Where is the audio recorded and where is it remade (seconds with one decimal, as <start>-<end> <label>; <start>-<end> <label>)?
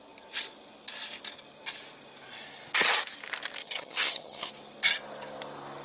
0.0-3.6 recorded; 3.6-4.5 remade; 4.5-5.8 recorded